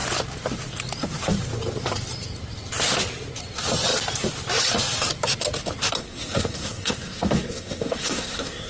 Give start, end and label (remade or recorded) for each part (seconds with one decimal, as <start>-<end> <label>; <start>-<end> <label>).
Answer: 0.0-6.0 recorded; 6.0-8.7 remade